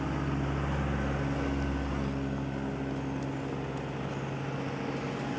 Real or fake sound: real